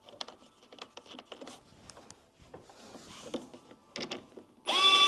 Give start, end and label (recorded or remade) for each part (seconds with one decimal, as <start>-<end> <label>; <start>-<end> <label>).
0.0-5.1 recorded